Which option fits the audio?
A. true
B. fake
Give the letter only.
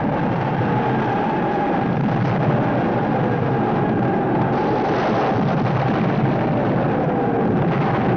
A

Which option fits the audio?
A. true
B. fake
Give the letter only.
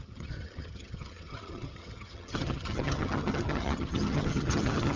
B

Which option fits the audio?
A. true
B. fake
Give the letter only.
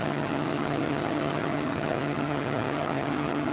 B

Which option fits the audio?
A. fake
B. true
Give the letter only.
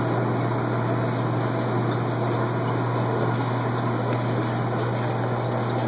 B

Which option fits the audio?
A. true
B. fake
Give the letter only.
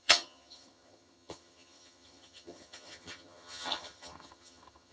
B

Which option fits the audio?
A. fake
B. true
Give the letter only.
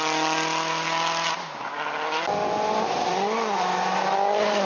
B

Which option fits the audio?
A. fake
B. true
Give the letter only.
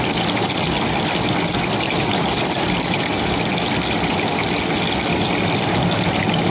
B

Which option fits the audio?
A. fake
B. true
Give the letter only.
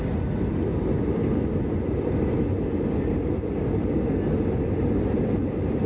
B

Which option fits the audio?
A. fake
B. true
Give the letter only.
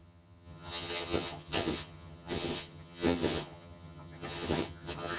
A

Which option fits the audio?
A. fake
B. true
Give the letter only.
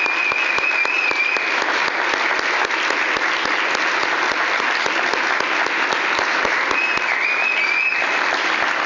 B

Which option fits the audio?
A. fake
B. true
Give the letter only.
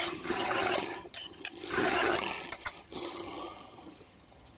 A